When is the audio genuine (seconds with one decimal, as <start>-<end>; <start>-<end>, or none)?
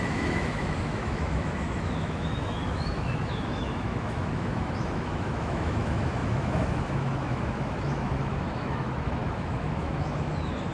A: none